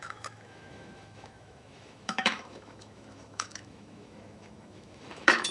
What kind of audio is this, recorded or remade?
remade